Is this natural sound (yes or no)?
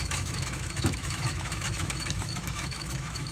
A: no